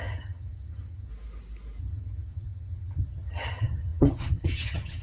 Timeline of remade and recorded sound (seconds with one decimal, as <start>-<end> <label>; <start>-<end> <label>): 0.0-1.1 remade; 1.1-1.8 recorded; 1.8-5.0 remade

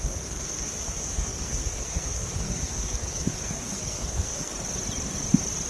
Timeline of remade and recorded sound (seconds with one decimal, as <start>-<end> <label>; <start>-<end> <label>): 0.0-4.5 remade; 4.5-5.7 recorded

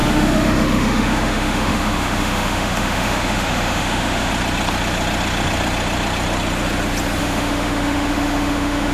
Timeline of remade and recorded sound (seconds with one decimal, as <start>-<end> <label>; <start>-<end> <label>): 0.0-4.3 remade; 4.3-7.2 recorded; 7.2-8.9 remade

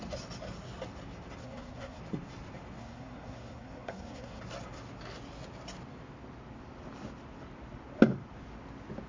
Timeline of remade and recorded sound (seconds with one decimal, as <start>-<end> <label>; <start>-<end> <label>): 0.0-1.4 recorded; 1.4-2.0 remade; 2.0-2.8 recorded; 2.8-4.4 remade; 4.4-9.1 recorded

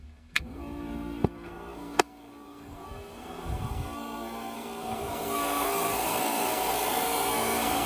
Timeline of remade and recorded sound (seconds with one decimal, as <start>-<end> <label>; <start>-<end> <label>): 0.0-7.9 remade

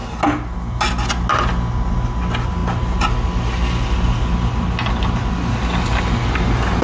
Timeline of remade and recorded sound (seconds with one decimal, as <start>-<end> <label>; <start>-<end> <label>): 0.0-6.8 recorded

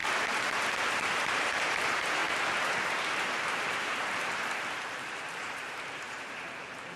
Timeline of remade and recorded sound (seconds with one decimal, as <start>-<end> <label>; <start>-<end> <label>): 0.0-0.5 recorded; 0.5-2.2 remade; 2.2-2.7 recorded; 2.7-7.0 remade